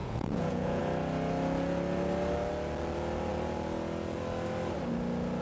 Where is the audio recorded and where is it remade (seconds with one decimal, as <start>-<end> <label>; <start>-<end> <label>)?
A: 0.0-0.8 remade; 0.8-5.4 recorded